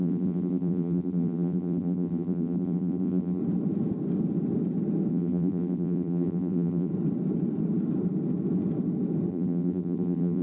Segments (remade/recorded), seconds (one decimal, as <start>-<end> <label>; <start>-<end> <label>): 0.0-3.4 remade; 3.4-5.1 recorded; 5.1-6.9 remade; 6.9-9.3 recorded; 9.3-10.4 remade